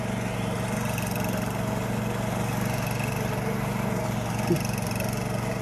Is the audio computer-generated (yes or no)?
no